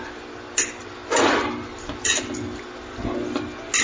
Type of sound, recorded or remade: recorded